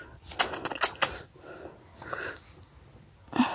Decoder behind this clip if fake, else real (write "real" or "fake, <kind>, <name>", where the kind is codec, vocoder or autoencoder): real